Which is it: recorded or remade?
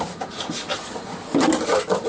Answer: recorded